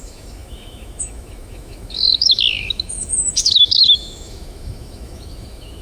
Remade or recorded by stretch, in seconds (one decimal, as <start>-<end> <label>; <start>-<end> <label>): 0.0-5.8 remade